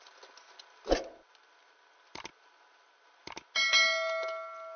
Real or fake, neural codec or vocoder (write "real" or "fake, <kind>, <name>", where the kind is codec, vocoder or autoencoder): real